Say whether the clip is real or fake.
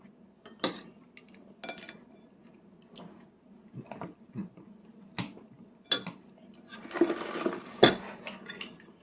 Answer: real